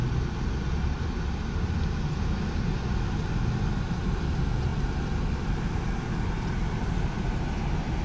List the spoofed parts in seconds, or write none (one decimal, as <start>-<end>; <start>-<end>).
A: none